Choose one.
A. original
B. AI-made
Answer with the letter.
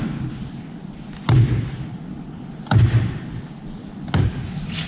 A